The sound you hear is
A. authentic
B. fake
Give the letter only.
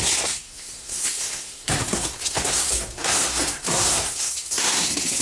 B